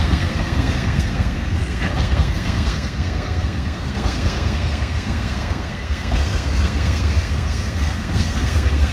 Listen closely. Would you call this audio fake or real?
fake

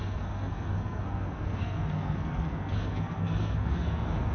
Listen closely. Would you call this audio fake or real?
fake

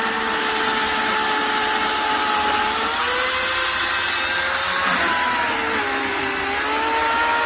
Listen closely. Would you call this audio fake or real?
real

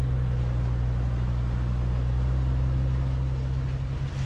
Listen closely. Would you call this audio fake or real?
real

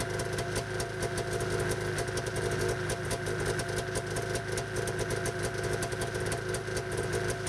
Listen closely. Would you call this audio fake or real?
real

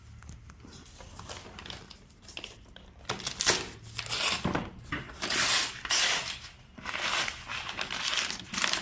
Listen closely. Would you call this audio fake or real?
real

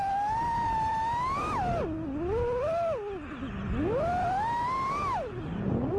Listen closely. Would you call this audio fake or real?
real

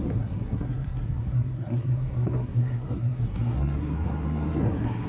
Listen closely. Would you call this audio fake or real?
fake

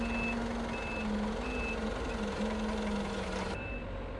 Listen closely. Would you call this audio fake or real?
real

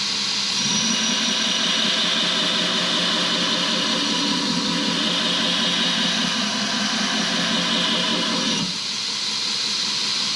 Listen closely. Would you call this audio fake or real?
real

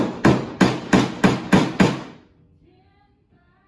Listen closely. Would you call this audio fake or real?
real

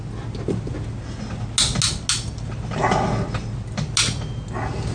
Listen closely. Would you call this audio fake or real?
real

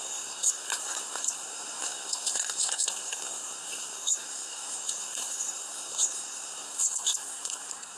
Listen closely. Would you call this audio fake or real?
fake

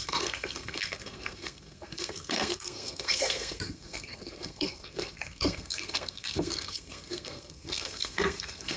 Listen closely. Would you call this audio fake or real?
fake